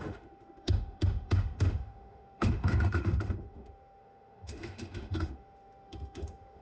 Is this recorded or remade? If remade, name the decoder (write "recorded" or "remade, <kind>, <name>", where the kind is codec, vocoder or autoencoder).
remade, autoencoder, DAC-VAE